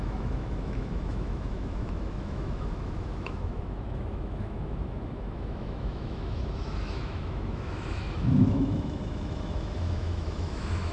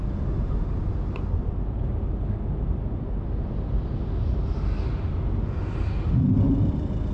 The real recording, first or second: second